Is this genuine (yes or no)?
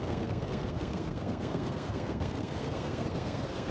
no